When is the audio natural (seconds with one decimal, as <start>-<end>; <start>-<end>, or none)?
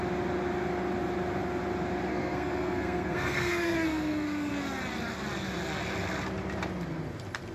0.0-2.1; 4.5-7.5